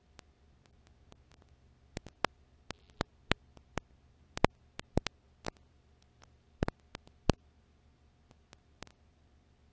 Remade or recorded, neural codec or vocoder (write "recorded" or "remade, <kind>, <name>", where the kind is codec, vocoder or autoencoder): recorded